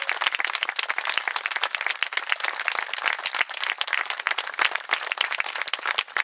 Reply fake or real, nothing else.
real